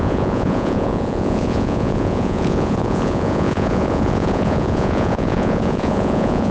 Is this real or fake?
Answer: fake